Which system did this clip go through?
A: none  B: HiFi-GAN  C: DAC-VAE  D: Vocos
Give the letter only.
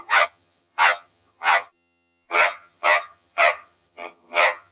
B